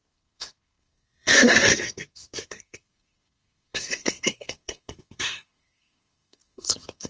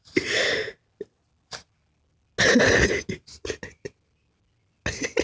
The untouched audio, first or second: second